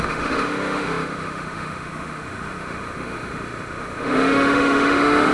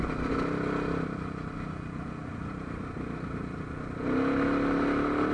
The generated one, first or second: first